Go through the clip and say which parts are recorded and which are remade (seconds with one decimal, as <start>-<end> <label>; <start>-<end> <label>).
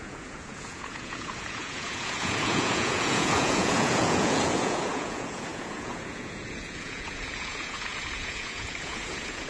0.0-9.5 remade